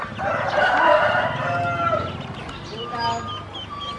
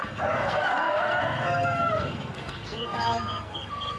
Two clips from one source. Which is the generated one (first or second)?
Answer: second